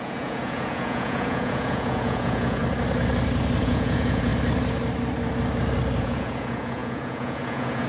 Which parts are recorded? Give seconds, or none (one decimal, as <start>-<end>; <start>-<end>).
2.6-3.6; 4.3-6.0